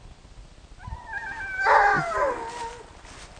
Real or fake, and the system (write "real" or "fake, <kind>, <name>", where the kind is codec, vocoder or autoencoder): real